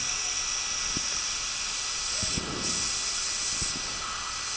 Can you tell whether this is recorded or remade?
recorded